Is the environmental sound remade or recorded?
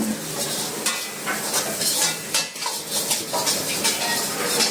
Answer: recorded